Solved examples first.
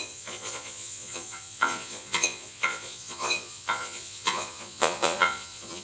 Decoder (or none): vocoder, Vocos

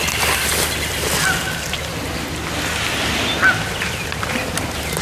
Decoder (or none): none